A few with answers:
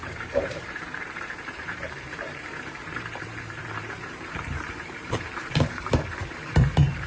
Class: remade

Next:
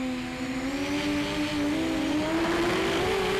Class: recorded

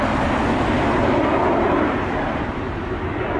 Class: recorded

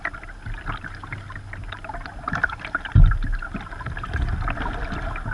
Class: recorded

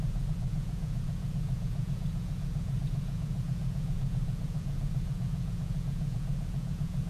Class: remade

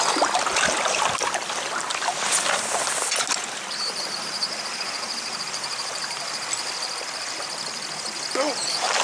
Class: recorded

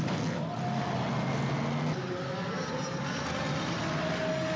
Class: recorded